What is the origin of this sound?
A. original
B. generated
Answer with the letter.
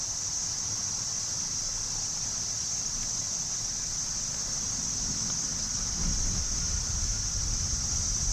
A